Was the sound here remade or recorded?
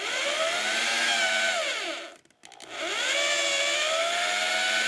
recorded